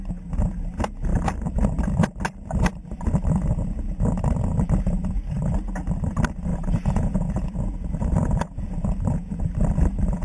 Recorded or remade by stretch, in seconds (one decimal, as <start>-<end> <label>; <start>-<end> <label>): 0.0-6.5 recorded; 6.5-8.7 remade; 8.7-10.2 recorded